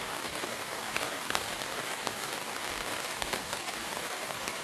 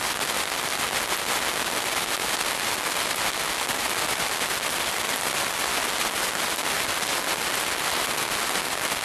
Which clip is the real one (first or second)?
second